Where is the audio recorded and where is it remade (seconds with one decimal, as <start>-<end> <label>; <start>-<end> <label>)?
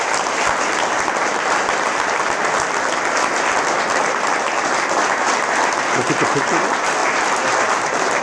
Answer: 0.0-8.2 recorded